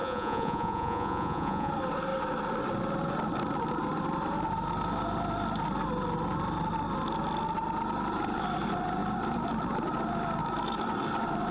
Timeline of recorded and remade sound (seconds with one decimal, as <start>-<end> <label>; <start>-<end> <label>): 0.0-1.7 remade; 1.7-11.5 recorded